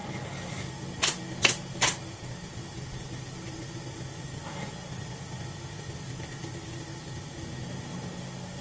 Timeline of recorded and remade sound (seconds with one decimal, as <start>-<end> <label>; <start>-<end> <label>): 0.0-8.6 recorded

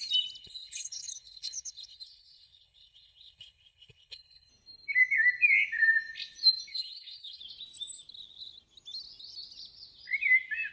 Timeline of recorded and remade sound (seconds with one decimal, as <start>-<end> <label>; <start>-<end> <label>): 0.0-0.4 recorded; 0.4-4.5 remade; 4.5-6.7 recorded; 6.7-7.4 remade; 7.4-10.7 recorded

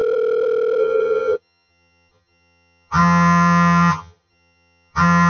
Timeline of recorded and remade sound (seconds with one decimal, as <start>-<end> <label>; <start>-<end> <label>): 0.0-0.8 recorded; 0.8-5.3 remade